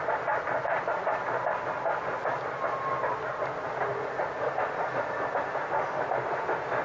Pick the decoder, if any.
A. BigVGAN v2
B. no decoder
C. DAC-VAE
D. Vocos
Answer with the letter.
B